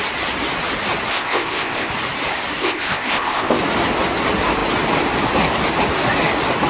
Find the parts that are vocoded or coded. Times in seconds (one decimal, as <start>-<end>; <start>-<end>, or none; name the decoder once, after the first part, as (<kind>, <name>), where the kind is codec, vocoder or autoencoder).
1.1-1.9 (codec, ZipCodec); 2.6-3.6